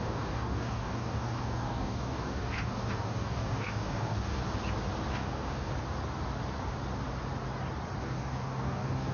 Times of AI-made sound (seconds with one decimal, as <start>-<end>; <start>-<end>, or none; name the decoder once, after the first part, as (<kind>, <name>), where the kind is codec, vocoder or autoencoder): 0.0-4.4 (codec, DAC); 5.1-5.7; 8.0-9.1